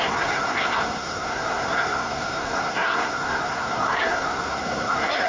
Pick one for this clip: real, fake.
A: fake